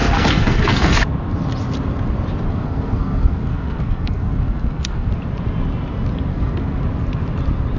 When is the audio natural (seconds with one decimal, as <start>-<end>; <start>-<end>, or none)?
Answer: 1.0-2.5; 5.1-6.3; 6.8-7.8